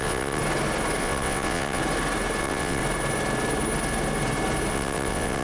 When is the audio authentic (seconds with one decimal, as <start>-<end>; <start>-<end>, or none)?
0.4-1.0; 1.8-2.4; 2.8-4.7